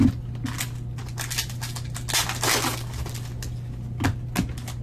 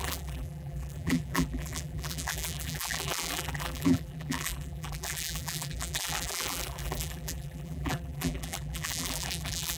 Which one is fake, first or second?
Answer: second